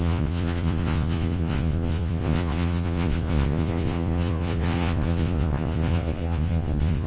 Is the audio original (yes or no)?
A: no